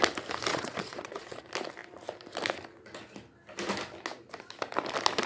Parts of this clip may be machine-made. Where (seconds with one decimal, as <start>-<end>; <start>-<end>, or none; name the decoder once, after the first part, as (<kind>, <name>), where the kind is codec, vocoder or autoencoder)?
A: 0.5-1.4 (vocoder, Vocos)